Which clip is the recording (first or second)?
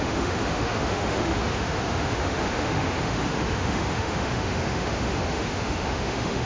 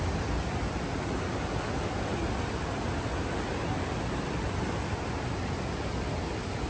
second